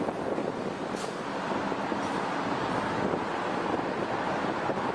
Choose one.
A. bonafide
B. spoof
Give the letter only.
A